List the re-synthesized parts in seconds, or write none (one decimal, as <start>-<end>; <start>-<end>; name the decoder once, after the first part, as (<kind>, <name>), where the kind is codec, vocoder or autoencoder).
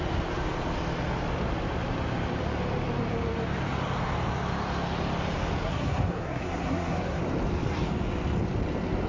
5.6-7.2 (codec, SNAC)